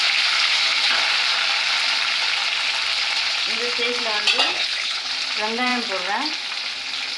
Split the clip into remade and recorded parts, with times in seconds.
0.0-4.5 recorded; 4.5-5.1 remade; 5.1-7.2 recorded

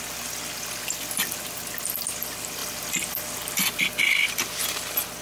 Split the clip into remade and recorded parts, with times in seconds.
0.0-5.2 recorded

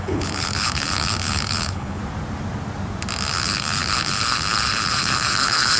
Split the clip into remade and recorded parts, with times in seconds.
0.0-2.0 remade; 2.0-3.3 recorded; 3.3-5.8 remade

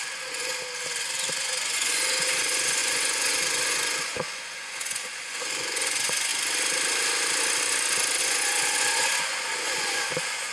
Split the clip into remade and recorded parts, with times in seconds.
0.0-0.5 remade; 0.5-1.4 recorded; 1.4-6.3 remade; 6.3-8.2 recorded; 8.2-10.5 remade

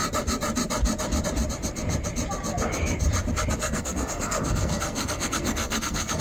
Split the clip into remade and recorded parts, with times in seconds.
0.0-3.6 recorded; 3.6-6.2 remade

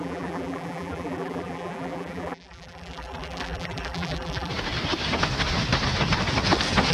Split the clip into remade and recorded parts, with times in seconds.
0.0-4.5 remade; 4.5-6.9 recorded

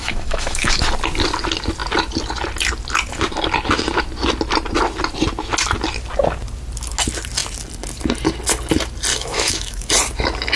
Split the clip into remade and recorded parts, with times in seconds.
0.0-0.8 remade; 0.8-9.1 recorded; 9.1-9.9 remade; 9.9-10.6 recorded

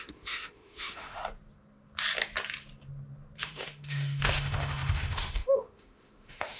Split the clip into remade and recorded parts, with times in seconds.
0.0-1.2 remade; 1.2-3.4 recorded; 3.4-6.6 remade